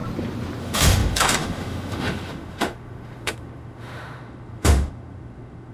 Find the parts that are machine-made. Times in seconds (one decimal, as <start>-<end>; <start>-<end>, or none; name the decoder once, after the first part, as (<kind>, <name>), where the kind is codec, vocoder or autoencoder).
0.6-5.7 (autoencoder, DAC-VAE)